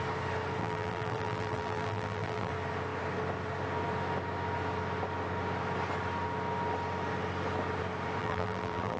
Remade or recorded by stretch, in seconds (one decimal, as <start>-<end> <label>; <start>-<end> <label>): 0.0-0.6 recorded; 0.6-2.5 remade; 2.5-8.2 recorded; 8.2-9.0 remade

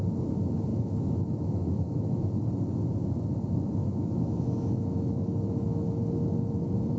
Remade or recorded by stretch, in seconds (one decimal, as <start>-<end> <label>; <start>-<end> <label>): 0.0-0.7 recorded; 0.7-2.3 remade; 2.3-3.8 recorded; 3.8-5.9 remade; 5.9-7.0 recorded

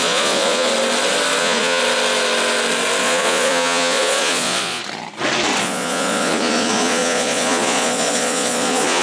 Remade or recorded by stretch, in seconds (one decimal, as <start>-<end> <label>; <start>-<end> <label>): 0.0-0.7 remade; 0.7-1.4 recorded; 1.4-1.8 remade; 1.8-3.0 recorded; 3.0-4.8 remade; 4.8-5.6 recorded; 5.6-9.0 remade

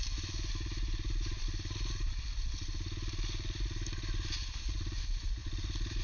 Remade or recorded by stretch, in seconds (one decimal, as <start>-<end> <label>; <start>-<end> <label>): 0.0-6.0 recorded